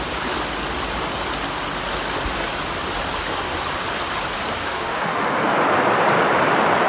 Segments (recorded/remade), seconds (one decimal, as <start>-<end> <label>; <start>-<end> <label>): 0.0-4.6 recorded; 4.6-5.5 remade; 5.5-6.9 recorded